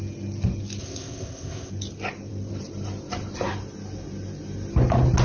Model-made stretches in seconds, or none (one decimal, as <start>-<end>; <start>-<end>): 0.8-1.7